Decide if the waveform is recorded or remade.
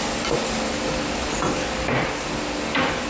recorded